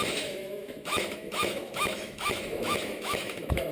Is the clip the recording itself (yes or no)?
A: no